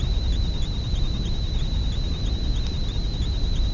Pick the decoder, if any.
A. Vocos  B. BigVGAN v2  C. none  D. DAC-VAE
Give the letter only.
C